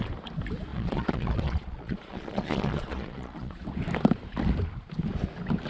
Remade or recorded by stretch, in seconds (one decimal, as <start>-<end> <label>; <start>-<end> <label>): 0.0-0.7 recorded; 0.7-3.6 remade; 3.6-5.7 recorded